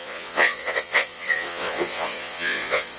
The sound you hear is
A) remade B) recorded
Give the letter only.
A